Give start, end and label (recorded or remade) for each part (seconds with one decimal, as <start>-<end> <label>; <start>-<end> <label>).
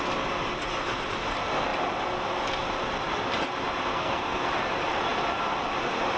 0.0-3.9 recorded; 3.9-4.5 remade; 4.5-6.2 recorded